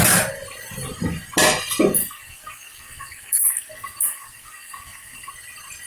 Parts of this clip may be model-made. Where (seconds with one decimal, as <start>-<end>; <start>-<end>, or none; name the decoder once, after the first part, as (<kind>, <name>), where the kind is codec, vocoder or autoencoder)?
2.0-5.3 (codec, SNAC)